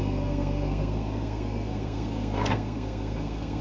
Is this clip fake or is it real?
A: fake